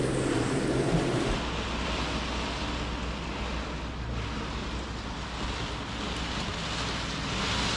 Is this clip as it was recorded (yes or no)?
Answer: yes